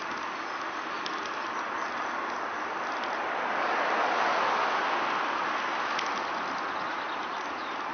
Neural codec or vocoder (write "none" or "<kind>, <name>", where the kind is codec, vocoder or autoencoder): none